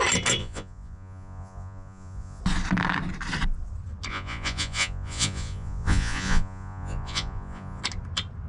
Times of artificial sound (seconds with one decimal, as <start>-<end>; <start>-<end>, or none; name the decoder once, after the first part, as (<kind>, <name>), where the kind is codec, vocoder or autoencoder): 0.4-2.4 (vocoder, Vocos); 4.1-7.8